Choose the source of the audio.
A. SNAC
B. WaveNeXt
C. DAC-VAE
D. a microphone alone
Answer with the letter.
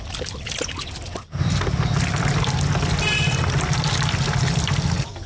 D